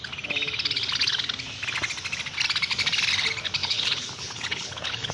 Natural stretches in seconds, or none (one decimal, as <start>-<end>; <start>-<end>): 0.0-3.6